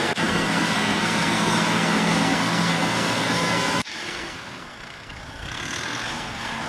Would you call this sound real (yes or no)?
no